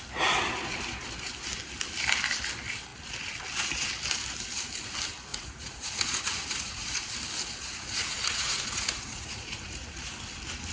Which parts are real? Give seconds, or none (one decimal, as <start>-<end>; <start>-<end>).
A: 0.0-5.3; 7.1-7.6; 10.1-10.7